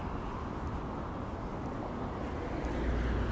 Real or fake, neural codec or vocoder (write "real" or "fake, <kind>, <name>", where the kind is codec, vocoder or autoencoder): real